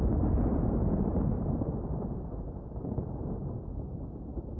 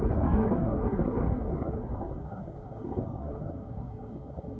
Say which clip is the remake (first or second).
second